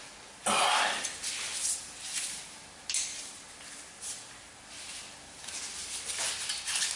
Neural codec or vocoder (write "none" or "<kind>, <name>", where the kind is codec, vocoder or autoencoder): none